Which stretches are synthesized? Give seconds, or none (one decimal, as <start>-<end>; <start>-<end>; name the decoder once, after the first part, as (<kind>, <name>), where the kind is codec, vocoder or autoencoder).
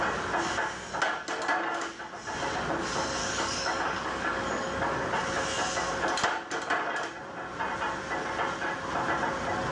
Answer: 3.2-5.1 (codec, DAC)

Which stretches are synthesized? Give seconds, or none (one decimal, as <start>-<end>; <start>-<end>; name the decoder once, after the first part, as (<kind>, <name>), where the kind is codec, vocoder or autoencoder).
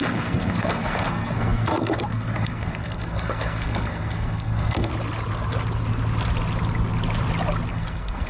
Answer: 0.0-4.9 (codec, SNAC); 7.7-8.3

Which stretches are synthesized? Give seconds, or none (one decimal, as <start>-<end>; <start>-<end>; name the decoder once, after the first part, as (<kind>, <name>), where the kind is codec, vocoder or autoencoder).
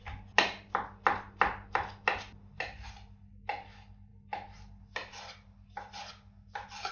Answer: none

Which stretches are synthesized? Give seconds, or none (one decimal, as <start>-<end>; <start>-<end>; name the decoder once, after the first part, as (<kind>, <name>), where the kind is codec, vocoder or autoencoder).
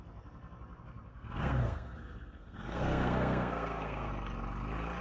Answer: 1.1-4.1 (codec, SNAC)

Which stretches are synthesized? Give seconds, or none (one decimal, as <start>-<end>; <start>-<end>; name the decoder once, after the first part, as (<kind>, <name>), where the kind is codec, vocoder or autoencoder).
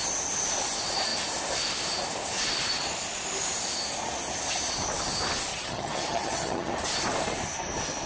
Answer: 5.5-6.7 (vocoder, HiFi-GAN)